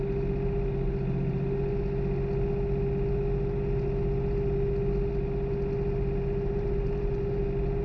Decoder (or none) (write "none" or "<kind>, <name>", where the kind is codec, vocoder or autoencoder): none